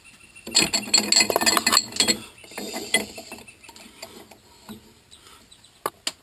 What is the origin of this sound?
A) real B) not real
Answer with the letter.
A